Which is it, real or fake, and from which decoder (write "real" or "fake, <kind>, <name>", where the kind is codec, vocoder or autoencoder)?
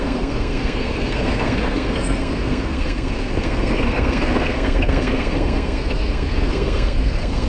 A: fake, codec, SNAC